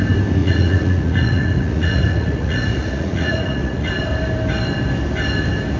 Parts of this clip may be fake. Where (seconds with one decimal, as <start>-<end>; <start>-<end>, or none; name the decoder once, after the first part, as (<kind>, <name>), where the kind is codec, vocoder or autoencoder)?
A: 0.4-3.9 (vocoder, Vocos)